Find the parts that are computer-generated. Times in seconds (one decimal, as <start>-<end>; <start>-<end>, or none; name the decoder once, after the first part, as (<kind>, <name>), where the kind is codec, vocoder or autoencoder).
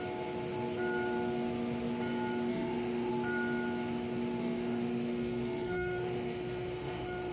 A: 2.5-3.1 (autoencoder, DAC-VAE); 4.4-7.3